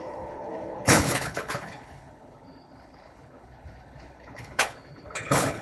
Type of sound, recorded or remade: remade